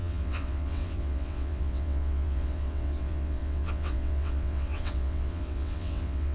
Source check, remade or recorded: remade